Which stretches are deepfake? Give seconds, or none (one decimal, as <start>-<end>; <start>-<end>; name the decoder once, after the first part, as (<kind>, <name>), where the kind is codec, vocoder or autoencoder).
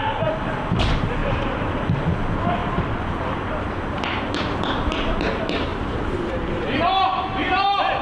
1.2-1.8 (vocoder, BigVGAN v2); 2.6-3.8; 5.7-7.2